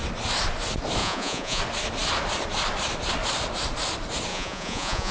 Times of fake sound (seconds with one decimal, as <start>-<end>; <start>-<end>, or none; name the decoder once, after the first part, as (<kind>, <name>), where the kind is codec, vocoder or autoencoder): 1.0-1.6 (vocoder, Vocos); 4.3-5.1

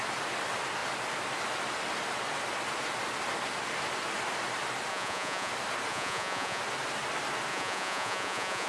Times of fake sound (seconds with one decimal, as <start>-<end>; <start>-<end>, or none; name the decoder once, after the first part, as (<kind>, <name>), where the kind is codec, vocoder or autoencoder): 4.9-5.5 (vocoder, Vocos); 5.9-6.6; 7.5-8.7

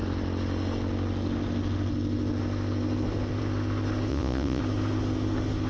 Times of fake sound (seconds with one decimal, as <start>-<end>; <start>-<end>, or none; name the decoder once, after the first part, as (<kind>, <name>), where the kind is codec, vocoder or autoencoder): 4.1-4.6 (vocoder, Vocos)

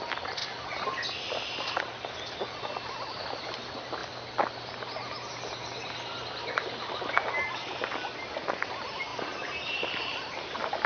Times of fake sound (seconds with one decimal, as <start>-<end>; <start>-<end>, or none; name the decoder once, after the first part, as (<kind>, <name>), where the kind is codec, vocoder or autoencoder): none